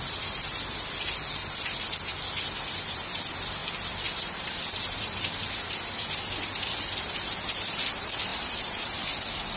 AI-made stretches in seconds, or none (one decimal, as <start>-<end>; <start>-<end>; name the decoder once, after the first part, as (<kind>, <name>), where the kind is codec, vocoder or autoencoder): 0.0-9.6 (vocoder, BigVGAN v2)